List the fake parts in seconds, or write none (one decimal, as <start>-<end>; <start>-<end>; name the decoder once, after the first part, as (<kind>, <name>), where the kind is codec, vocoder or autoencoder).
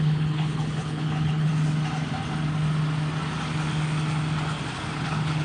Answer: 0.0-1.5 (codec, HILCodec); 4.7-5.4